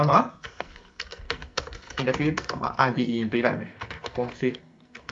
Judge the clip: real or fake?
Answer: fake